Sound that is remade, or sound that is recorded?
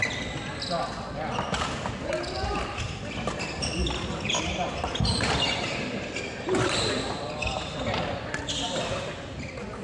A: recorded